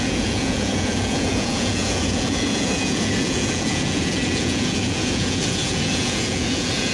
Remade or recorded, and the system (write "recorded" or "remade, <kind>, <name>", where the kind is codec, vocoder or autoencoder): remade, vocoder, Vocos